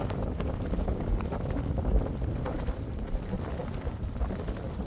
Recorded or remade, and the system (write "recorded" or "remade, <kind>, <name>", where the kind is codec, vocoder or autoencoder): recorded